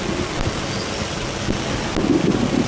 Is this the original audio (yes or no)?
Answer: yes